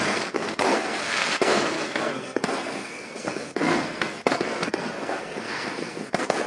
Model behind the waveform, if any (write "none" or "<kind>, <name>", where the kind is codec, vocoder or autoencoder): codec, SNAC